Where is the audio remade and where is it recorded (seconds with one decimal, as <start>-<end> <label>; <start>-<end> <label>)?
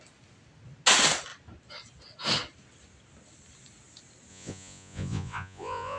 0.0-4.3 recorded; 4.3-6.0 remade